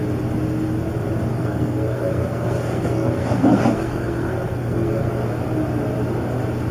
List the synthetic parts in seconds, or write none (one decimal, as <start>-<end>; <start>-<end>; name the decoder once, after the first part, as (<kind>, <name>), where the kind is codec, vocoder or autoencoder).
1.3-5.3 (codec, SNAC)